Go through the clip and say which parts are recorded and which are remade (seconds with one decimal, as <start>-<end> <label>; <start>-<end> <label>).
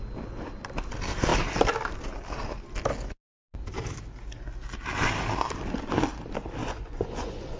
0.0-6.6 recorded; 6.6-7.6 remade